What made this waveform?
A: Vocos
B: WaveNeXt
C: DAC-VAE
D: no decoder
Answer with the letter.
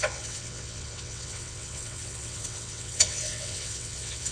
B